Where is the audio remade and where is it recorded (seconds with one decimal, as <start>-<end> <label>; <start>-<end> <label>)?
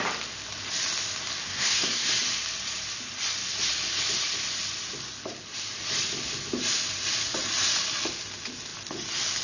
0.0-1.4 recorded; 1.4-2.1 remade; 2.1-9.4 recorded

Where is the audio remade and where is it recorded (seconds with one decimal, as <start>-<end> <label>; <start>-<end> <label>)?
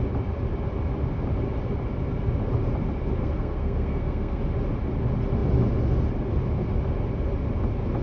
0.0-3.2 recorded; 3.2-4.4 remade; 4.4-8.0 recorded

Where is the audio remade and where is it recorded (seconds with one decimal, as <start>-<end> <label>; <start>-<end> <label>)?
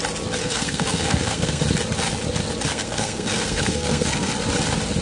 0.0-0.4 recorded; 0.4-1.6 remade; 1.6-2.7 recorded; 2.7-4.3 remade; 4.3-5.0 recorded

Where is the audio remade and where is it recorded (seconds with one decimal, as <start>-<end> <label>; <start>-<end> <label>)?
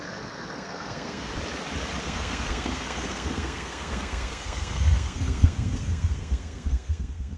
0.0-1.3 remade; 1.3-2.0 recorded; 2.0-7.4 remade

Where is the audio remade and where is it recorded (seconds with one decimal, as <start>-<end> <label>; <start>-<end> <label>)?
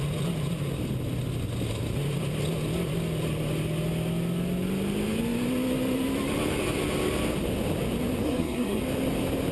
0.0-8.2 recorded; 8.2-8.8 remade; 8.8-9.5 recorded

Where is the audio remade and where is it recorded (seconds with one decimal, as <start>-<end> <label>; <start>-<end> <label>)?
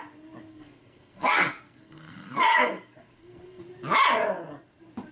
0.0-0.5 recorded; 0.5-3.6 remade; 3.6-5.1 recorded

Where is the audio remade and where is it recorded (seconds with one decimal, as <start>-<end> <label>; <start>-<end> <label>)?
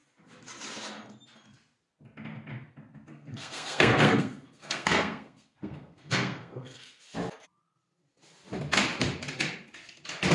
0.0-3.1 recorded; 3.1-7.0 remade; 7.0-10.3 recorded